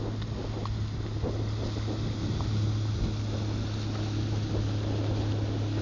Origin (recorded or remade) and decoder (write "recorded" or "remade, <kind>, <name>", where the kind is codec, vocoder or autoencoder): recorded